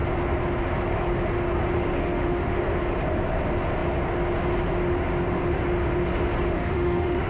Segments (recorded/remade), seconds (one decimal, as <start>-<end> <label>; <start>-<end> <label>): 0.0-2.0 recorded; 2.0-2.6 remade; 2.6-6.5 recorded; 6.5-7.3 remade